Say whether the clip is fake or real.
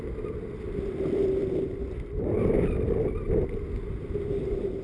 real